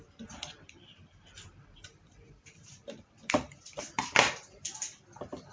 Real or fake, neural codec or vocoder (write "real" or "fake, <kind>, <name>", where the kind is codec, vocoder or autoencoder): fake, vocoder, BigVGAN v2